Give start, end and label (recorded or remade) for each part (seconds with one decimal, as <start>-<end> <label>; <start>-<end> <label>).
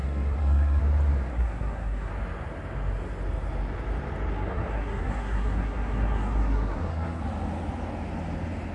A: 0.0-0.8 remade; 0.8-1.3 recorded; 1.3-2.1 remade; 2.1-4.3 recorded; 4.3-7.2 remade; 7.2-8.7 recorded